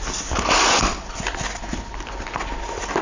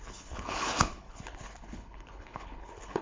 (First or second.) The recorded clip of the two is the first